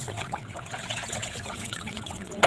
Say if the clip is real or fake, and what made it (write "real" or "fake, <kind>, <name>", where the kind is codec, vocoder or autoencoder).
fake, vocoder, WaveNeXt